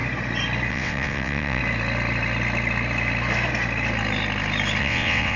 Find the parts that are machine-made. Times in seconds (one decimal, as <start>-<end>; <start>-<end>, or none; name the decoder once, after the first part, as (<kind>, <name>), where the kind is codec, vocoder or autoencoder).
0.7-1.6 (vocoder, WaveNeXt); 4.8-5.4